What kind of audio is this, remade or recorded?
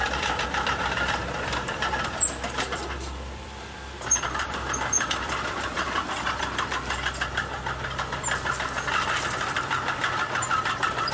remade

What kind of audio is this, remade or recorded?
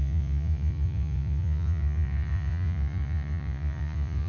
remade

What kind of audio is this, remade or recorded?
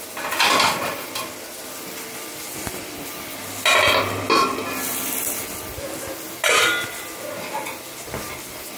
recorded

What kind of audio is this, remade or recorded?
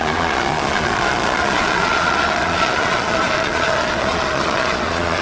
remade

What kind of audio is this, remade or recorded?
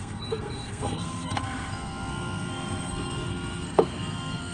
remade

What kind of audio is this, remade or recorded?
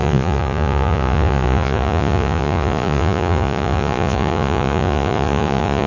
remade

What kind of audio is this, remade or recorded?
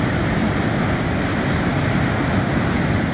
recorded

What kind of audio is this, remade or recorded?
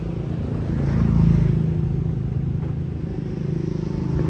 recorded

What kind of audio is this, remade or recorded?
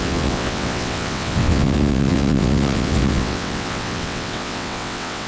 remade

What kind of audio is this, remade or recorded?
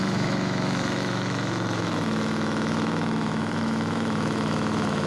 remade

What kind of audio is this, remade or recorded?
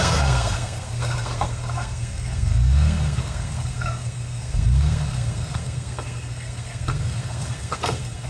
remade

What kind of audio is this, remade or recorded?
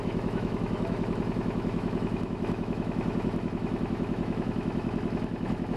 remade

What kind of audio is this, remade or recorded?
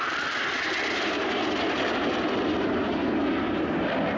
recorded